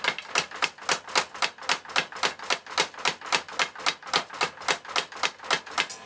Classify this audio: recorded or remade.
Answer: recorded